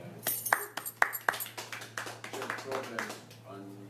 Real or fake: real